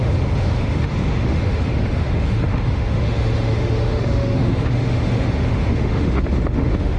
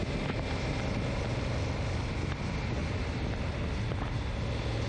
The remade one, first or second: first